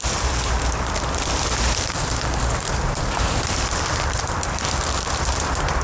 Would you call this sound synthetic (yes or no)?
yes